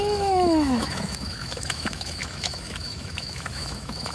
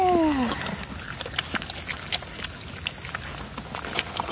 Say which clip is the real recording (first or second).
second